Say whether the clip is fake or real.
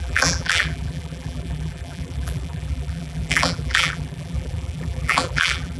fake